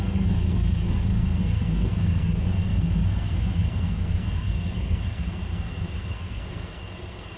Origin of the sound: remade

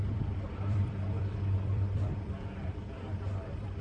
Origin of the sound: remade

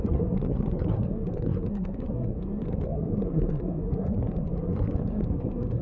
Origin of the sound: remade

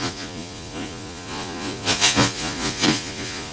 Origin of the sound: remade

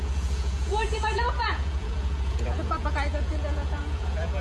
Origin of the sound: remade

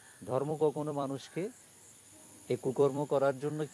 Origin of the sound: remade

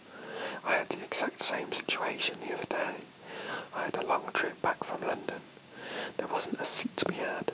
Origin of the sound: remade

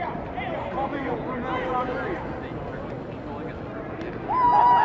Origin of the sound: recorded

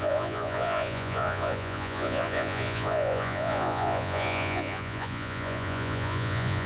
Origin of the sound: remade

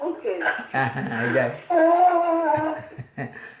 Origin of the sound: recorded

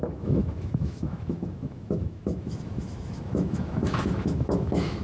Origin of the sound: remade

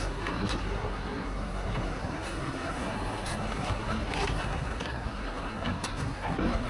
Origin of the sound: remade